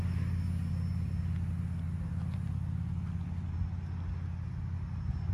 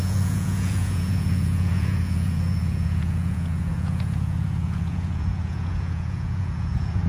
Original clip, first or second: first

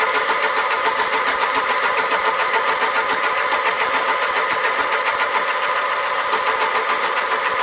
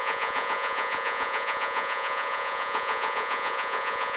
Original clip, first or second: first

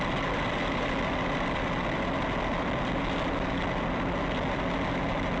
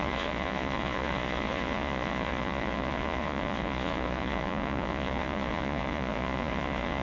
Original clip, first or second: first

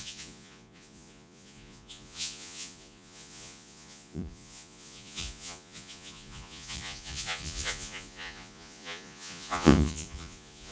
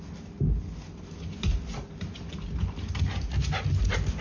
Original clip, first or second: second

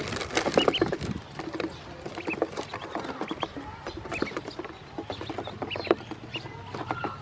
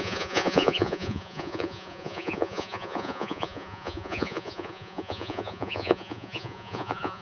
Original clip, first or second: first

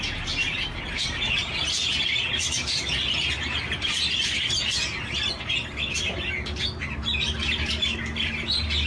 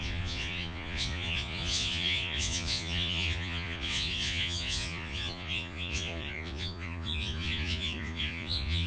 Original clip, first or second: first